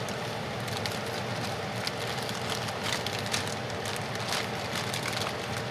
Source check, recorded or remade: recorded